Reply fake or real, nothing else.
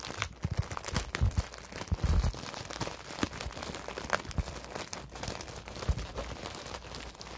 real